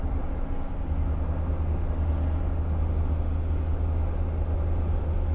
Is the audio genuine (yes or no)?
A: yes